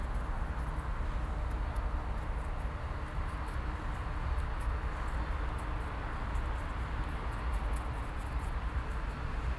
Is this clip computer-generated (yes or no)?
no